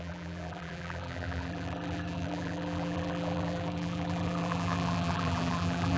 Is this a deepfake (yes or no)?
yes